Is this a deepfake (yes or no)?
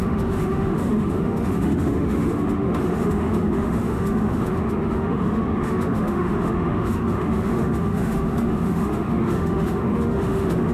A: yes